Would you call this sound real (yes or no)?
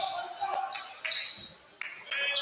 yes